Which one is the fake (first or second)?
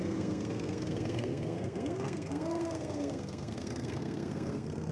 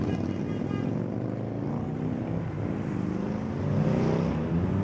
first